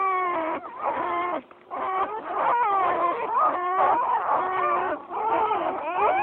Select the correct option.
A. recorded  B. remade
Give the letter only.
B